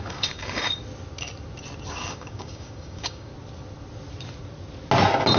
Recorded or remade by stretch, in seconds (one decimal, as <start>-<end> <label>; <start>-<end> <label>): 0.0-0.8 remade; 0.8-1.9 recorded; 1.9-3.3 remade; 3.3-5.4 recorded